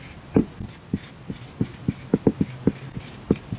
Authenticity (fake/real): real